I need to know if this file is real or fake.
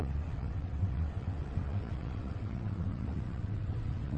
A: fake